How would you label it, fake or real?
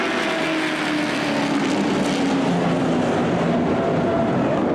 real